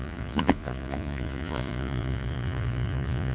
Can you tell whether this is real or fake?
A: fake